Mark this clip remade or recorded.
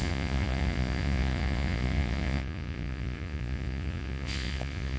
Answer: remade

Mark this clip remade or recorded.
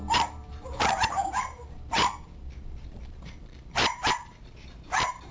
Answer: remade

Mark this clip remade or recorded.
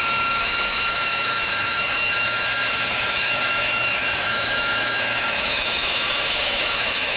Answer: remade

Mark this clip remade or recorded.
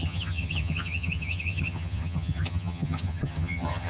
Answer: remade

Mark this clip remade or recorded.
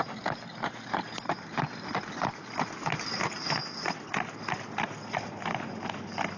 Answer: recorded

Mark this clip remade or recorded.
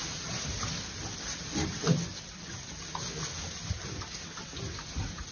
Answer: recorded